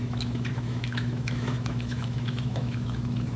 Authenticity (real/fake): fake